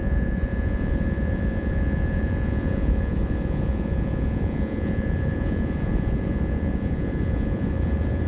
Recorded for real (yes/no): no